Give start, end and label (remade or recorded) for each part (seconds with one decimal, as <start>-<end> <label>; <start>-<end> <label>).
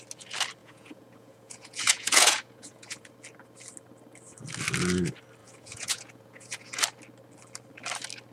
0.0-0.6 recorded; 0.6-3.1 remade; 3.1-5.4 recorded; 5.4-6.8 remade; 6.8-8.3 recorded